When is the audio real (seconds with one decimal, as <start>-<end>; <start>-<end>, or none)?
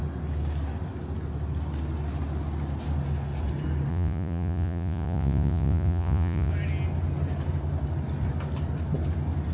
0.0-3.9; 6.5-9.5